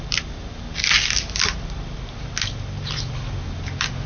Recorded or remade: recorded